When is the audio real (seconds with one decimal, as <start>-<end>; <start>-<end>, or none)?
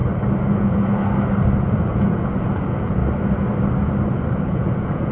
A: 0.0-0.6; 1.0-1.6; 3.0-4.3